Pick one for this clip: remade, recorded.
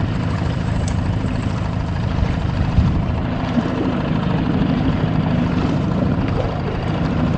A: remade